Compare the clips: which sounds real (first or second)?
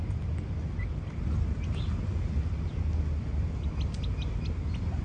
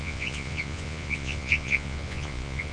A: first